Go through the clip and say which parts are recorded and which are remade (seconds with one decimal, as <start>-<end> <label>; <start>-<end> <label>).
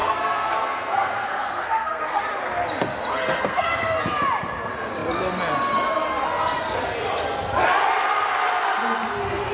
0.0-2.2 remade; 2.2-3.1 recorded; 3.1-3.7 remade; 3.7-9.5 recorded